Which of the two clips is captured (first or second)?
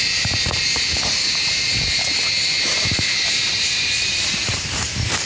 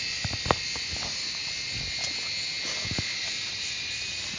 second